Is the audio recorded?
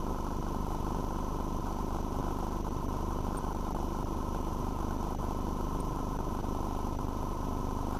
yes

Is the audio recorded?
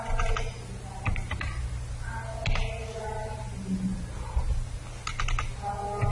yes